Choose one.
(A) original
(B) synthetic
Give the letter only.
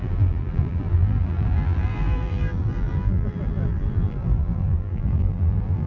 B